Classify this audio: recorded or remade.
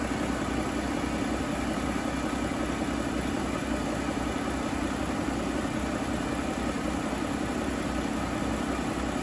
recorded